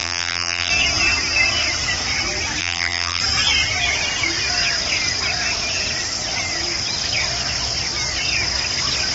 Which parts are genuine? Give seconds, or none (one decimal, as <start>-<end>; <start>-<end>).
0.7-2.6; 3.2-9.1